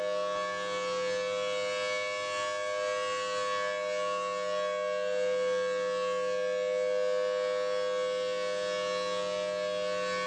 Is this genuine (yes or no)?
yes